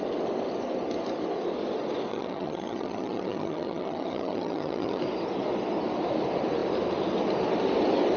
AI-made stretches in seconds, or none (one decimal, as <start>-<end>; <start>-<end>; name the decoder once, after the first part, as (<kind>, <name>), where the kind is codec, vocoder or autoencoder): 2.1-5.0 (vocoder, HiFi-GAN)